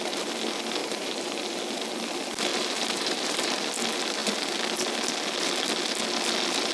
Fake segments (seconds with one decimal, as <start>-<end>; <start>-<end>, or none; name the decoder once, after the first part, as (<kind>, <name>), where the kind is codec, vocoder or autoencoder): 0.8-1.6 (vocoder, BigVGAN v2); 2.5-3.7